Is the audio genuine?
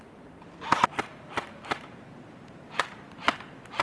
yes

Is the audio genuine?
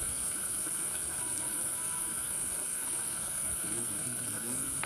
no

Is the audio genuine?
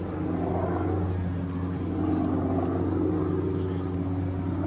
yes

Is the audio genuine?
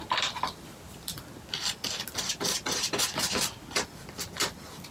yes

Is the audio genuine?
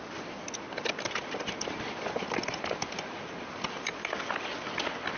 yes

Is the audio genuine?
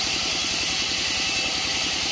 yes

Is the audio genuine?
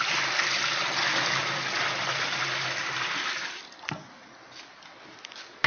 yes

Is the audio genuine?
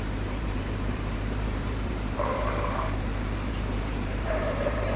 no